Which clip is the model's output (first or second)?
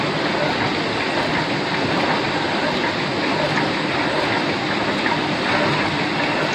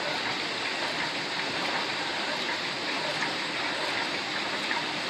second